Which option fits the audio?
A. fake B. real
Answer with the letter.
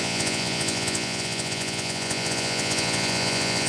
A